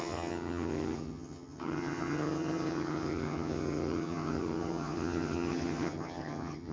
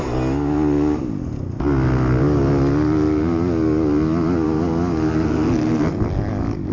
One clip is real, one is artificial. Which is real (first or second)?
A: second